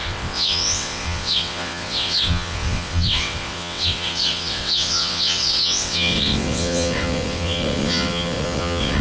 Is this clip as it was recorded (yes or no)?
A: no